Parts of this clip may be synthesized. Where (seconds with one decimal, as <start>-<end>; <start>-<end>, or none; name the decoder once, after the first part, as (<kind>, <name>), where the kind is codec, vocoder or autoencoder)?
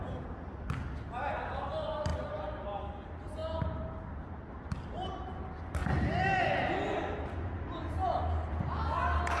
none